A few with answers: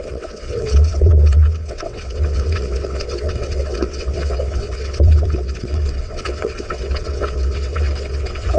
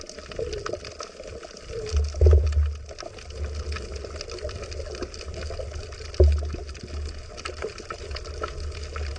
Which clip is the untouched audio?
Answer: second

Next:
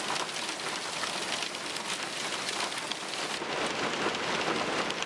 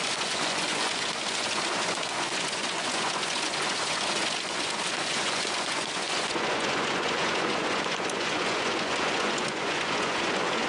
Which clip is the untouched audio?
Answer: first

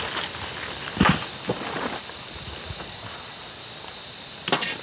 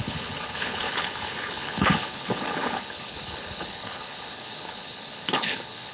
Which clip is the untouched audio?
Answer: first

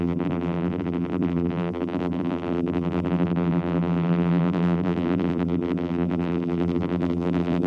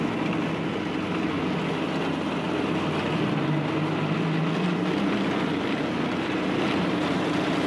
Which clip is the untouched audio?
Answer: second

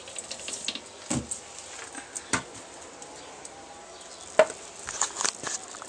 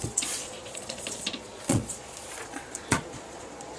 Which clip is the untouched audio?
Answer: first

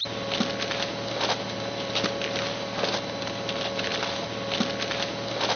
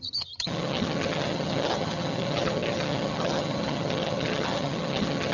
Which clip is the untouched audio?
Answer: first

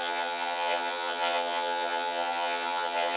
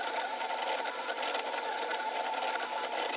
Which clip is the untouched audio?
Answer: second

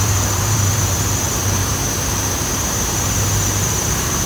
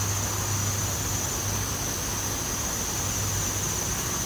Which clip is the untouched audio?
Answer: second